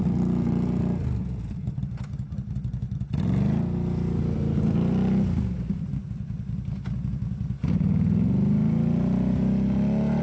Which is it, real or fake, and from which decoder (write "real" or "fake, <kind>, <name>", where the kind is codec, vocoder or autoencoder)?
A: real